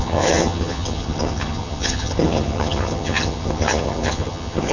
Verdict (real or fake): fake